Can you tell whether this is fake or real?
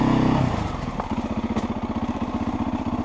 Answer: real